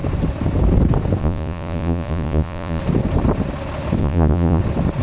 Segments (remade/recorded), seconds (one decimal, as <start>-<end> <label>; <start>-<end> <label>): 0.0-1.2 recorded; 1.2-2.8 remade; 2.8-4.0 recorded; 4.0-4.6 remade; 4.6-5.0 recorded